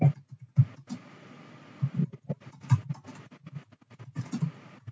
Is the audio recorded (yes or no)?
yes